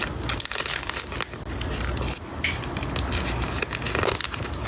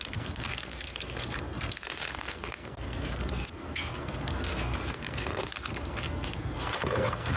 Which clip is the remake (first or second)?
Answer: second